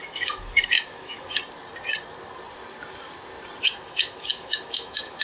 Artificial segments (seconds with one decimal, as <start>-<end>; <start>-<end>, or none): 0.0-1.4; 3.6-5.2